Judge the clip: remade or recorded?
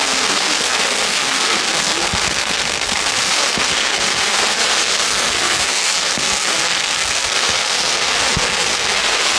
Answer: remade